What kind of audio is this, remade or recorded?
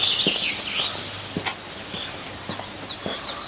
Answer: recorded